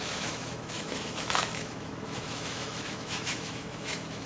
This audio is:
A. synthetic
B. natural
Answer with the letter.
A